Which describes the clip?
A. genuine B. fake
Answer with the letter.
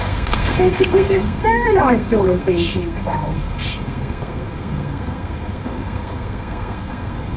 B